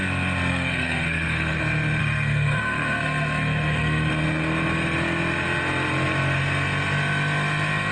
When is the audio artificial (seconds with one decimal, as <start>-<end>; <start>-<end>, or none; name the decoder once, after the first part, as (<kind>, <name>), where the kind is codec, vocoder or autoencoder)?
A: 0.5-1.6 (codec, SNAC); 2.0-4.1